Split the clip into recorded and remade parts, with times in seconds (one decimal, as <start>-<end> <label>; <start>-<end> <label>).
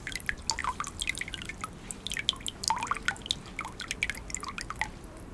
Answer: 0.0-5.3 recorded